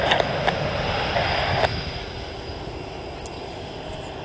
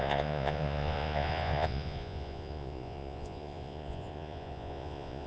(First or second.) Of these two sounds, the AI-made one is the second